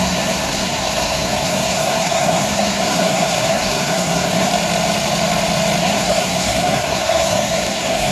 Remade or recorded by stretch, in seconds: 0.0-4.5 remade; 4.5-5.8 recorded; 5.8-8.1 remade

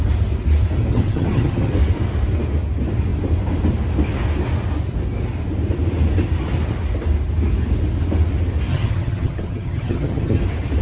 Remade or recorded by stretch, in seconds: 0.0-0.9 recorded; 0.9-1.7 remade; 1.7-8.7 recorded; 8.7-10.4 remade; 10.4-10.8 recorded